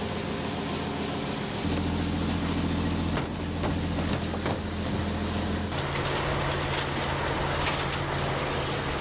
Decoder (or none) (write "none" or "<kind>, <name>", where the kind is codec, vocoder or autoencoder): none